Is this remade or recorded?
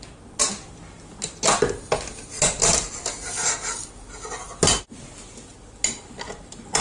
recorded